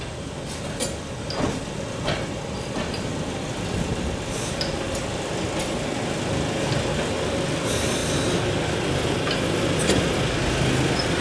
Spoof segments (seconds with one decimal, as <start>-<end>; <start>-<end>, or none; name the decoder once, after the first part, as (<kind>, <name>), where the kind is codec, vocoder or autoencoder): none